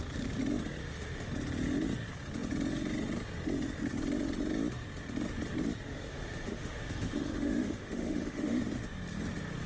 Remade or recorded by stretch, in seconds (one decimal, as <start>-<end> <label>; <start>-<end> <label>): 0.0-0.8 recorded; 0.8-1.3 remade; 1.3-6.1 recorded; 6.1-8.6 remade; 8.6-9.7 recorded